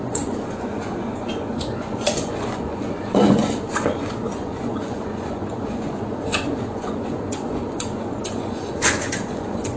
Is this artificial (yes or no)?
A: yes